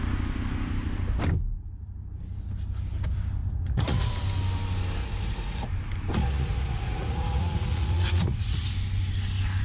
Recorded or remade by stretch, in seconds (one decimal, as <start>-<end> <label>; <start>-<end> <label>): 0.0-3.4 recorded; 3.4-4.1 remade; 4.1-5.0 recorded; 5.0-5.7 remade; 5.7-6.2 recorded; 6.2-8.7 remade; 8.7-9.6 recorded